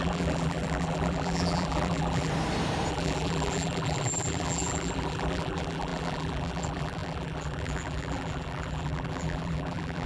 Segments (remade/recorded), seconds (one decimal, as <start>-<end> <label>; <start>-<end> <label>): 0.0-2.3 remade; 2.3-2.9 recorded; 2.9-10.1 remade